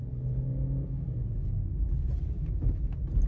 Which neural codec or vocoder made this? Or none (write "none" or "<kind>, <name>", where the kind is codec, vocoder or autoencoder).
none